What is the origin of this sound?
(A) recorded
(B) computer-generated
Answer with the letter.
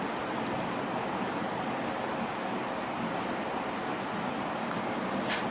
A